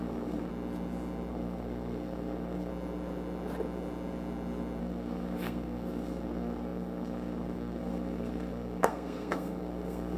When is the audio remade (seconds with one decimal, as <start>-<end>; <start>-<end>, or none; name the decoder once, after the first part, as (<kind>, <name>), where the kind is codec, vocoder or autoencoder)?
0.0-0.5 (codec, SNAC); 1.3-2.7; 4.8-10.2